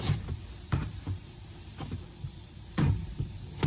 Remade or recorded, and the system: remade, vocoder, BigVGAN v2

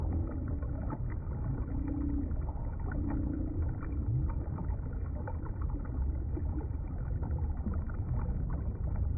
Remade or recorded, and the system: remade, vocoder, BigVGAN v2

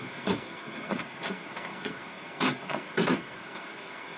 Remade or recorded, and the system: remade, codec, SNAC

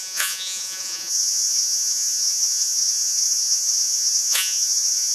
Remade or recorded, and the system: remade, vocoder, Vocos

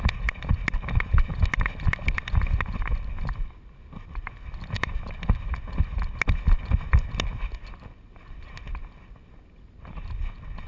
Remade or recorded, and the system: recorded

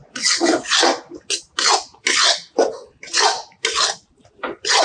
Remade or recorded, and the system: recorded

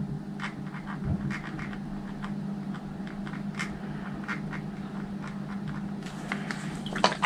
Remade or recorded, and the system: recorded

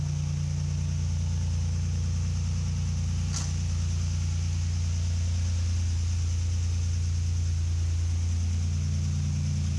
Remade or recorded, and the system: recorded